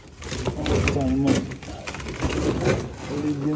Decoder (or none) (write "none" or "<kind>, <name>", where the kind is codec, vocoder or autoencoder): none